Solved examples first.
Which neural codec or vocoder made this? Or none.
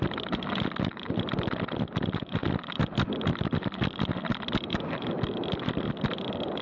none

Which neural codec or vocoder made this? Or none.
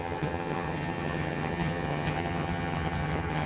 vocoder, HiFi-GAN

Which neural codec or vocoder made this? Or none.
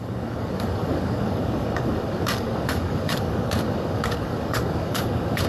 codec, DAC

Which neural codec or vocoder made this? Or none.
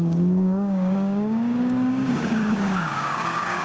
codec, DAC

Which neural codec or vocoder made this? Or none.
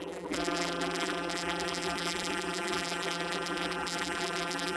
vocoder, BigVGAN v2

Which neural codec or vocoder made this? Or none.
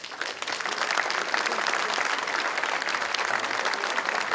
none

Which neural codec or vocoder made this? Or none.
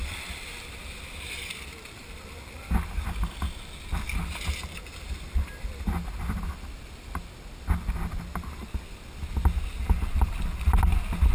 none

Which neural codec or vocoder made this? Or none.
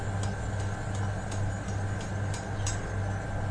none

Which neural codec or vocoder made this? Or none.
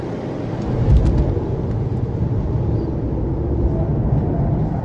none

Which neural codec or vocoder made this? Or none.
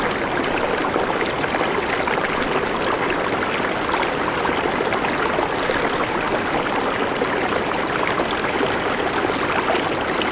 none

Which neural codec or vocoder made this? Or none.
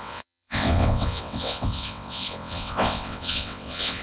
vocoder, WaveNeXt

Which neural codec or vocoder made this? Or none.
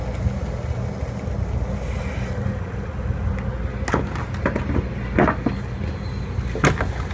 none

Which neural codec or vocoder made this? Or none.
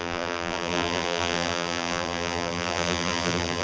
vocoder, BigVGAN v2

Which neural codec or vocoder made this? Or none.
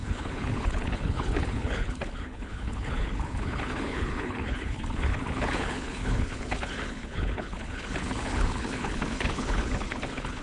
codec, HILCodec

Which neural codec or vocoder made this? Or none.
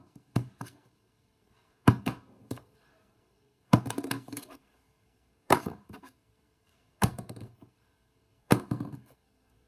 codec, SNAC